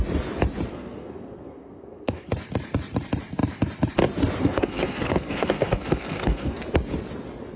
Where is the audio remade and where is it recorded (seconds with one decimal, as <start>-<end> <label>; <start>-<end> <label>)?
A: 0.0-0.7 recorded; 0.7-2.3 remade; 2.3-4.4 recorded; 4.4-6.6 remade; 6.6-7.6 recorded